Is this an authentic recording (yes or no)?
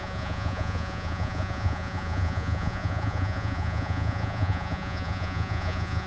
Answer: no